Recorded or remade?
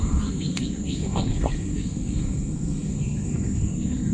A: remade